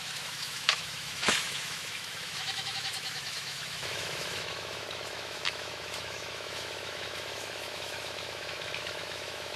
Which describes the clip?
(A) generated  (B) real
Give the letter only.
A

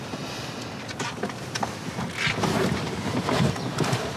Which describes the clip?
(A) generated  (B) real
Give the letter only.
B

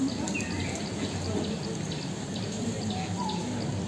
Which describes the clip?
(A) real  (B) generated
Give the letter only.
A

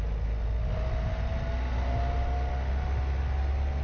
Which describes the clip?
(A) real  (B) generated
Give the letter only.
A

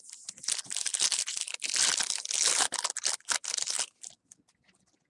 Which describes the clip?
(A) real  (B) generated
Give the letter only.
A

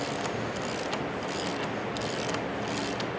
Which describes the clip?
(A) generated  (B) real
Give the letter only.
B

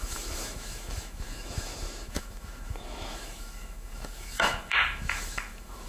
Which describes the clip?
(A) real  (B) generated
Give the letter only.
B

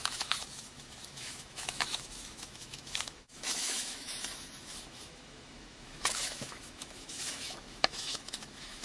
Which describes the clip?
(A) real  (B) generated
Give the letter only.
B